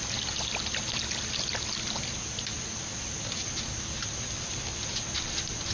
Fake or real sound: real